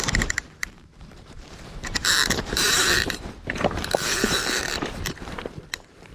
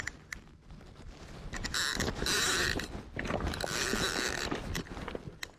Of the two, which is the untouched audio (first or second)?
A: second